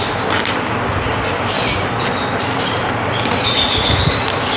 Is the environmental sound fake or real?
real